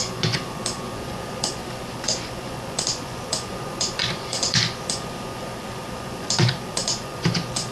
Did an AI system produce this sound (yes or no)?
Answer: yes